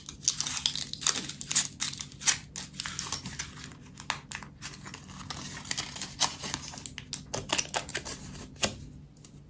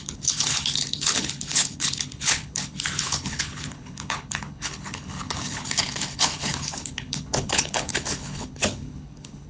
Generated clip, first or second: second